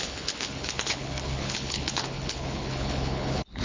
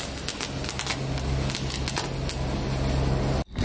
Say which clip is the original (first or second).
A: second